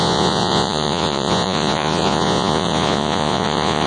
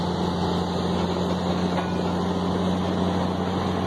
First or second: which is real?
second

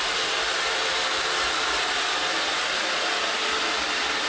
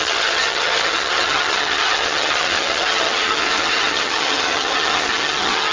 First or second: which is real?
first